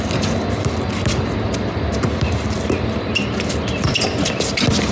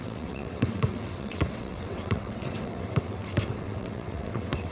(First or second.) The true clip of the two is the first